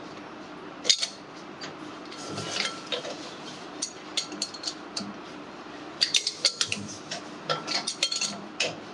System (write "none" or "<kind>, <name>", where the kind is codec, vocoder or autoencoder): vocoder, BigVGAN v2